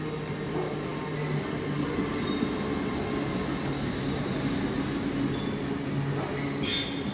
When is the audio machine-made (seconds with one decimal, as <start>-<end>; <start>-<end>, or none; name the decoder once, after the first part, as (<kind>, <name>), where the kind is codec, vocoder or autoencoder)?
none